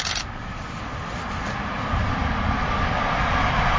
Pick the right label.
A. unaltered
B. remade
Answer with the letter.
A